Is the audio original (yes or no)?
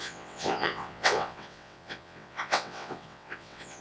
no